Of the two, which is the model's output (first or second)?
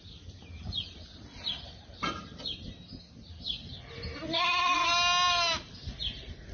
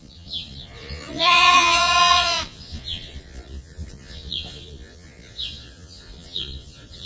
second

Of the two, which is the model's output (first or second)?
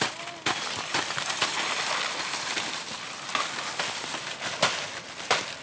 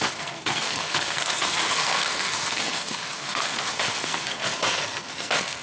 second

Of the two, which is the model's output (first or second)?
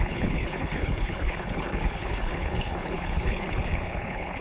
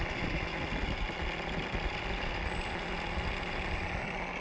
first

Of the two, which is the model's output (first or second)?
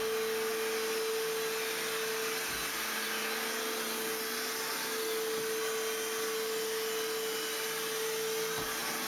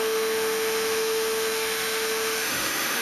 second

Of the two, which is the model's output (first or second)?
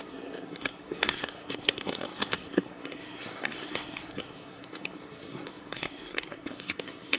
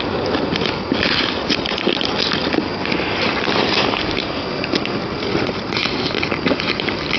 first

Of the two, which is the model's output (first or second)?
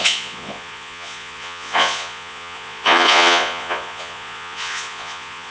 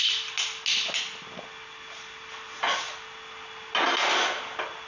first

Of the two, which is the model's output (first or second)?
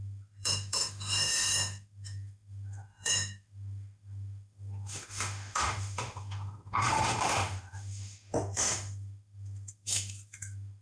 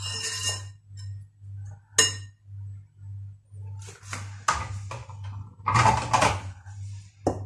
first